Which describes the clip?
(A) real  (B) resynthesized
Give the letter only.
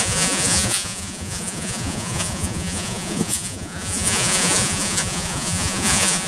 B